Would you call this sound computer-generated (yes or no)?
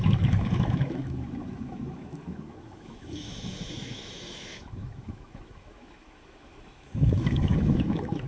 yes